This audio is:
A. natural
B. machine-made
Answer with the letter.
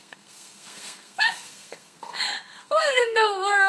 B